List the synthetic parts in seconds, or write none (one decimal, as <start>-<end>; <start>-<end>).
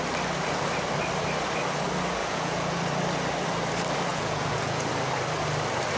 2.2-2.8; 4.1-4.9